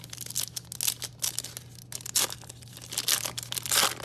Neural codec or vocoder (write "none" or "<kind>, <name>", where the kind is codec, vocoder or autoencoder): none